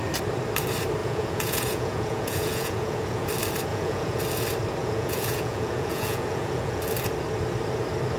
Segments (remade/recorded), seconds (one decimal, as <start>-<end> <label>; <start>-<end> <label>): 0.0-1.0 recorded; 1.0-3.3 remade; 3.3-3.7 recorded; 3.7-4.2 remade; 4.2-4.8 recorded; 4.8-6.8 remade; 6.8-8.2 recorded